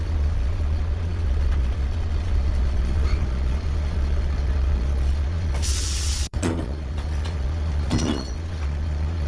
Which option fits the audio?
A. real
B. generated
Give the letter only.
B